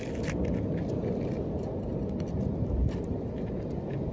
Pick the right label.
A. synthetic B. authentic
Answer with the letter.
B